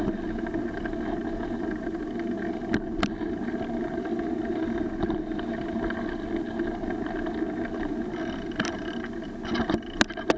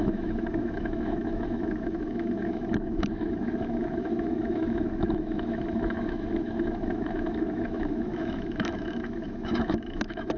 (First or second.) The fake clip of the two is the second